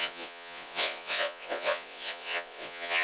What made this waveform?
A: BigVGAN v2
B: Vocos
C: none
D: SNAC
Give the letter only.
B